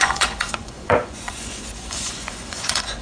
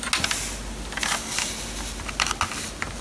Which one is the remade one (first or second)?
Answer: first